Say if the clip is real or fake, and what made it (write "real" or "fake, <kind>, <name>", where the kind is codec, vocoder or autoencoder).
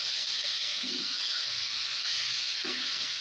fake, codec, SNAC